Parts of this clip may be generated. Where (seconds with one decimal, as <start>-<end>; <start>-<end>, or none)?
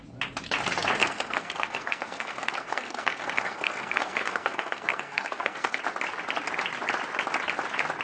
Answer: 1.0-5.8